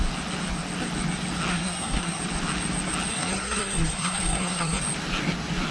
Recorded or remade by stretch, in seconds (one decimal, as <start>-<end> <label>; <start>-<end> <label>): 0.0-1.5 recorded; 1.5-2.2 remade; 2.2-3.1 recorded; 3.1-4.8 remade; 4.8-5.7 recorded

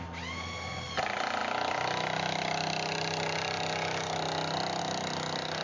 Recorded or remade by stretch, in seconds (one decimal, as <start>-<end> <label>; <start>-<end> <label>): 0.0-5.6 recorded

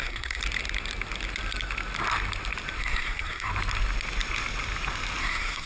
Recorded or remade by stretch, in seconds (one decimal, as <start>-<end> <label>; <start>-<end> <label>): 0.0-0.4 remade; 0.4-2.8 recorded; 2.8-3.5 remade; 3.5-5.2 recorded; 5.2-5.7 remade

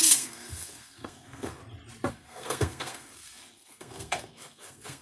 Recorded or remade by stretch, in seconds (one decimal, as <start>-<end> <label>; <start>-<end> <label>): 0.0-1.6 remade; 1.6-2.1 recorded; 2.1-5.0 remade

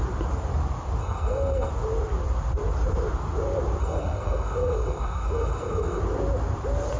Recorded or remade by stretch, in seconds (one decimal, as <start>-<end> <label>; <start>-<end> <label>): 0.0-1.0 recorded; 1.0-1.7 remade; 1.7-3.8 recorded; 3.8-6.0 remade; 6.0-7.0 recorded

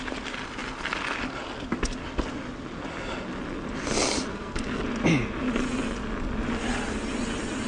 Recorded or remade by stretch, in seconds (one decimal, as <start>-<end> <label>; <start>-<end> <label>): 0.0-4.3 recorded; 4.3-4.8 remade; 4.8-7.7 recorded